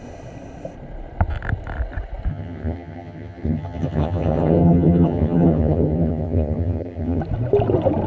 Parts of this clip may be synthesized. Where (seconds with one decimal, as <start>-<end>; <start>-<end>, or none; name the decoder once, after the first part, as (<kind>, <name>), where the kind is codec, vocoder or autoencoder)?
2.3-7.2 (vocoder, HiFi-GAN)